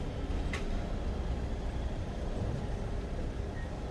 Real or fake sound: fake